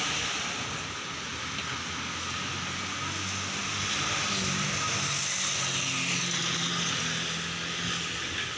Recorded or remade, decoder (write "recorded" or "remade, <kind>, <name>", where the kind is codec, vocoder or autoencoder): recorded